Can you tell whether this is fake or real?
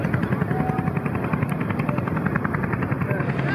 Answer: real